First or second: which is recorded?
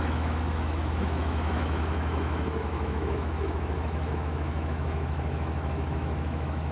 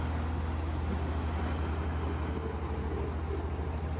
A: second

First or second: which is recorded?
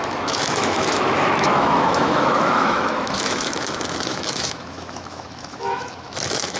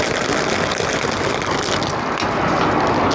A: second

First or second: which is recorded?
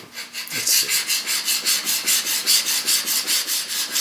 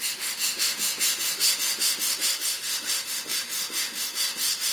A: first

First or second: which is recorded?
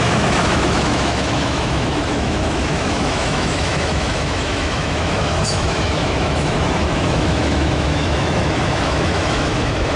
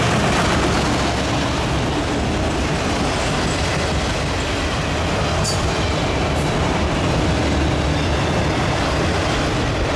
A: second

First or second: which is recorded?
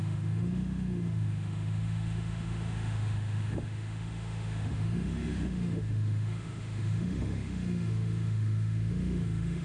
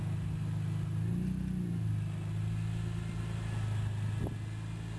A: second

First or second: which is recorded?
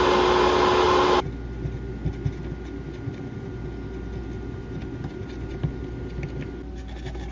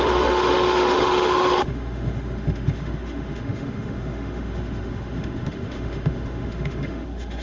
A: first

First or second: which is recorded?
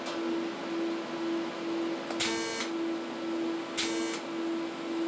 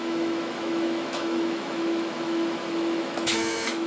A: first